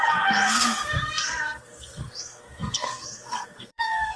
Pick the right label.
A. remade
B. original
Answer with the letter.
A